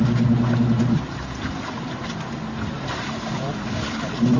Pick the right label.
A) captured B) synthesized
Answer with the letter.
B